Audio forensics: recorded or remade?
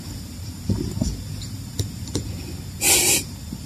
recorded